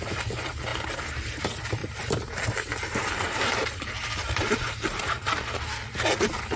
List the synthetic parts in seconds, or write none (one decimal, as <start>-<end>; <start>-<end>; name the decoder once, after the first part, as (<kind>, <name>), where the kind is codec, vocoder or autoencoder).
0.7-1.4 (vocoder, BigVGAN v2); 1.8-5.6